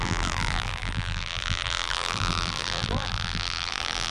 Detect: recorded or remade remade